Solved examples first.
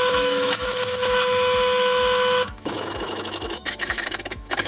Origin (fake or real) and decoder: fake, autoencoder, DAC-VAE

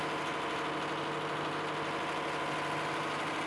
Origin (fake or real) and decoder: real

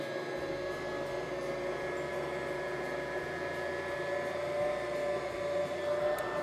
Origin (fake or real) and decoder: real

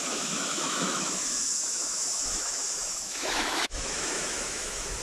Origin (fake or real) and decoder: fake, autoencoder, DAC-VAE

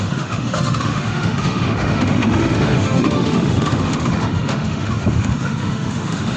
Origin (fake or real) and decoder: fake, autoencoder, DAC-VAE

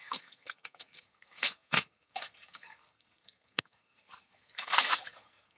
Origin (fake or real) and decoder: fake, codec, SNAC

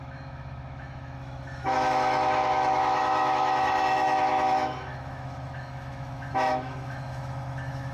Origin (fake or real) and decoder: fake, autoencoder, DAC-VAE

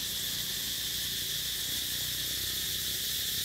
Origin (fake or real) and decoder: real